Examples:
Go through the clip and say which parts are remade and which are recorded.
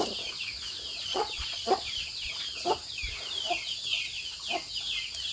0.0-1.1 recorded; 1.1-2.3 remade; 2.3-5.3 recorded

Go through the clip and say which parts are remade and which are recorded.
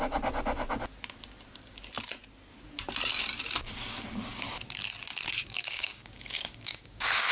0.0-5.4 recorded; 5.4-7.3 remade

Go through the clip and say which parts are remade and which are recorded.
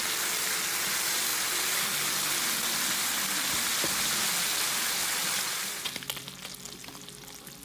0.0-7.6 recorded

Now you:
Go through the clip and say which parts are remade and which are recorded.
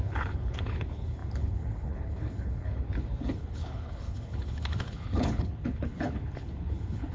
0.0-7.1 remade